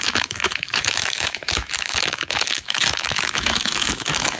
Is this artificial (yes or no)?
yes